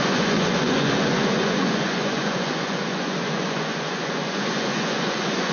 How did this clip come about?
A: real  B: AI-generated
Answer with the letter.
B